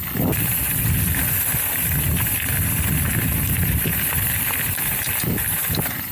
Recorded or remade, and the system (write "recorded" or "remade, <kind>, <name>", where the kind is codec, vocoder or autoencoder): recorded